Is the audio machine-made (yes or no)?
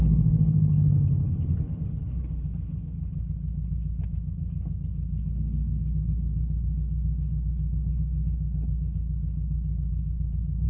yes